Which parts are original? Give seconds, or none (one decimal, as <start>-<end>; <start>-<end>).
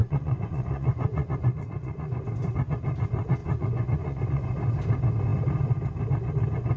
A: 2.2-3.4; 4.5-6.8